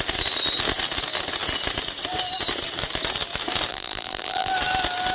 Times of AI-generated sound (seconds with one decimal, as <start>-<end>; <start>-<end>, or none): 3.7-4.5